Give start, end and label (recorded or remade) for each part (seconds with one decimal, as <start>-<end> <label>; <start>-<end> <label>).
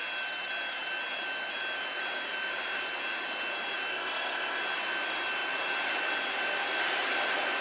0.0-3.9 recorded; 3.9-4.6 remade; 4.6-7.6 recorded